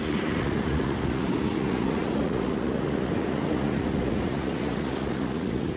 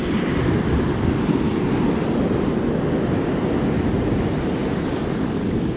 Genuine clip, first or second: second